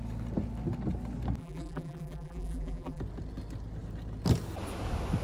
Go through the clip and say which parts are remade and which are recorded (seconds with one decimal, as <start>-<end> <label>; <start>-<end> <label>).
0.0-1.4 recorded; 1.4-3.0 remade; 3.0-5.2 recorded